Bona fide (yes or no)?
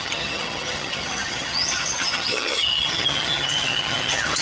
no